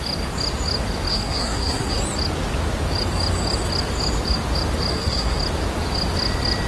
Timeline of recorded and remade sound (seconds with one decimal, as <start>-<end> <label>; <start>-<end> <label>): 0.0-1.1 recorded; 1.1-2.0 remade; 2.0-4.9 recorded; 4.9-5.4 remade; 5.4-6.7 recorded